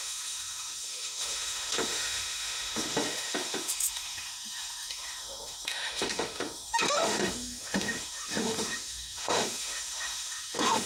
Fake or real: fake